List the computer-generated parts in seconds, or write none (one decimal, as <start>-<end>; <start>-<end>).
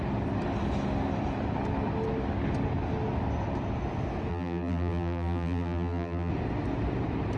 4.3-6.3